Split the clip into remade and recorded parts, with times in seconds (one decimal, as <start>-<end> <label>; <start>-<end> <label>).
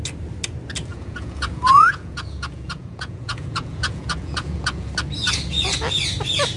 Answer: 0.0-0.9 recorded; 0.9-4.9 remade; 4.9-6.6 recorded